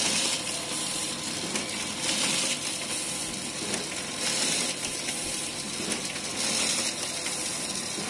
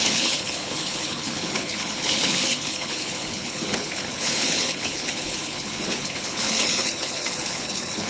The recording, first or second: first